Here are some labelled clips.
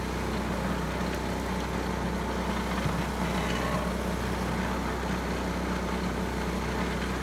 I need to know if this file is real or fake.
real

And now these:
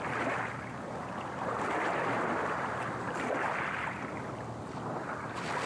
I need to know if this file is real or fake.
real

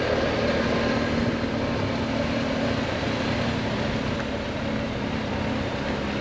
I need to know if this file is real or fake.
real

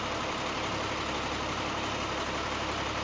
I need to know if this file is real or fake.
real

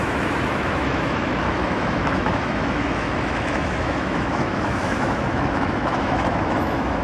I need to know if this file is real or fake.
fake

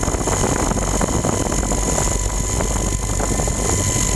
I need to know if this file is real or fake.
real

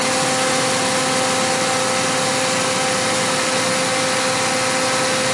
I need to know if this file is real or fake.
real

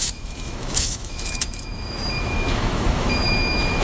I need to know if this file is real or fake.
fake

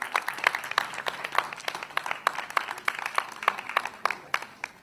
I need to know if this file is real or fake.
real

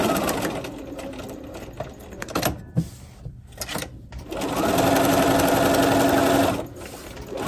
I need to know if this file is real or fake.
real